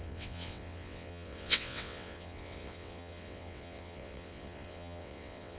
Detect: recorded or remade remade